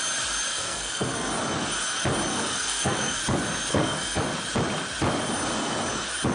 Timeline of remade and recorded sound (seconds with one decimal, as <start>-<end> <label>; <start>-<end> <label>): 0.0-0.5 recorded; 0.5-1.3 remade; 1.3-2.3 recorded; 2.3-3.2 remade; 3.2-3.7 recorded; 3.7-4.2 remade; 4.2-6.3 recorded